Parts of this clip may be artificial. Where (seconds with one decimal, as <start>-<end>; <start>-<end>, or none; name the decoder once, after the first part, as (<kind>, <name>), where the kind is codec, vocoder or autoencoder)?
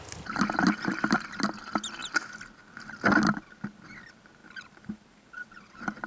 4.4-5.5 (vocoder, BigVGAN v2)